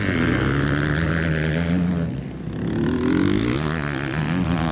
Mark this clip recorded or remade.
recorded